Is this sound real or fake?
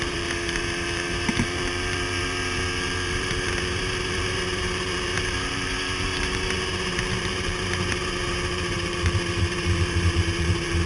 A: fake